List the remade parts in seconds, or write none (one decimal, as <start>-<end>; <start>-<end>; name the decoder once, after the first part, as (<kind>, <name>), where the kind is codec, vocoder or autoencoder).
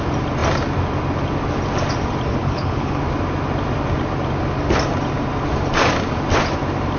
2.4-3.0 (codec, HILCodec)